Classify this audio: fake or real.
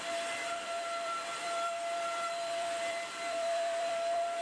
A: fake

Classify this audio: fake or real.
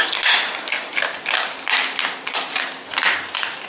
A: real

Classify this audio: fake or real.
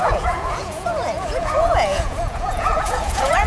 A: fake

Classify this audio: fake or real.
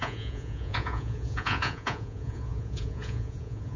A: fake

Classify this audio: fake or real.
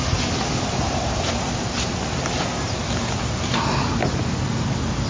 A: real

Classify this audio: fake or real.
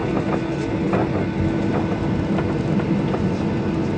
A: real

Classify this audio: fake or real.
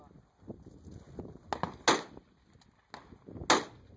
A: real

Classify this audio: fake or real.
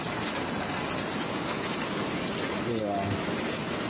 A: real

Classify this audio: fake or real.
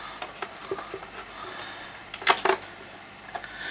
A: real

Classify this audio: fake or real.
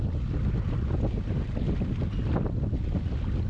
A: real